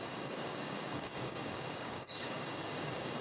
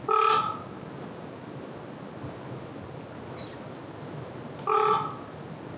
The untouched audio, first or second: second